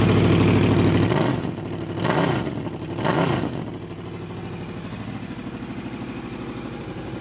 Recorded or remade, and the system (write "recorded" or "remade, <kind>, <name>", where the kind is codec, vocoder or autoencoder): recorded